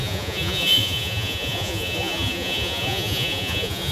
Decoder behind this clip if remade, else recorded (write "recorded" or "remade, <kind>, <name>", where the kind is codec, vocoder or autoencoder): remade, vocoder, Vocos